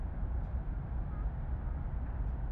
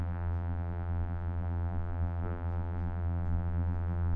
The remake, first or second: second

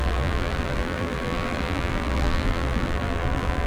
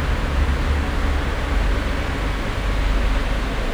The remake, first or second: first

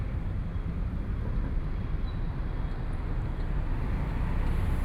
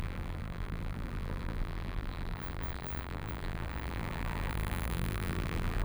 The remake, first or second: second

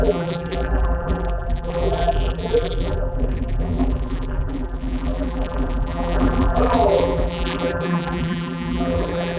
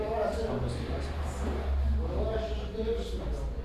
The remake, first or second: first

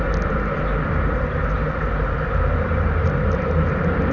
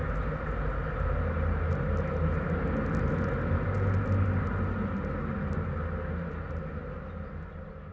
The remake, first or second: first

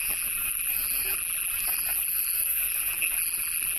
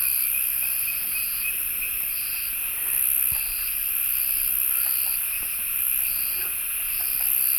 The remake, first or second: first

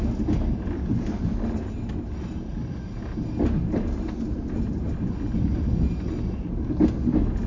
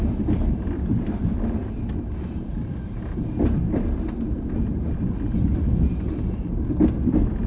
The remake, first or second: second